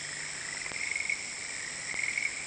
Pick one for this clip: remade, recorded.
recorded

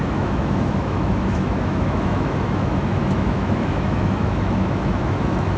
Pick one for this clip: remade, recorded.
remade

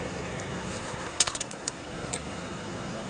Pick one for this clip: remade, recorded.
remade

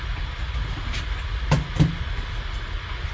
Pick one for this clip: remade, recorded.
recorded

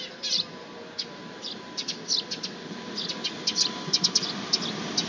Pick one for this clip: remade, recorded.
recorded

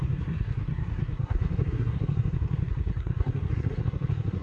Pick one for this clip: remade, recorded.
remade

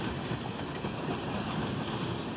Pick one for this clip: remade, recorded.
recorded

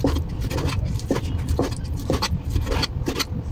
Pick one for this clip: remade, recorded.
recorded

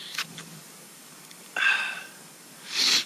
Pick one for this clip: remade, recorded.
remade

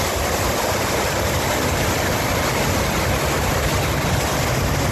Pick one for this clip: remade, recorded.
recorded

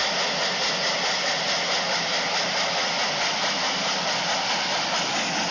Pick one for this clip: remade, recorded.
recorded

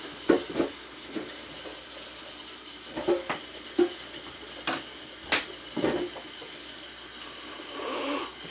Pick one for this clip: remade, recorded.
recorded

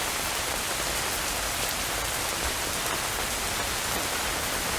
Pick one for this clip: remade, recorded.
recorded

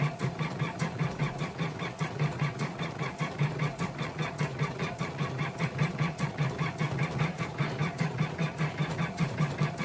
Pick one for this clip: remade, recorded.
remade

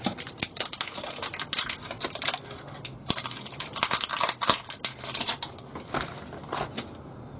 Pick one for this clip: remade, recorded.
recorded